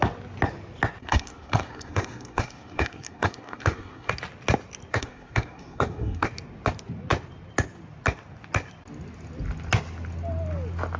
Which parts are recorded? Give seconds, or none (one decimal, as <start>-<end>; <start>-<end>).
0.0-1.0; 4.1-4.9; 6.3-11.0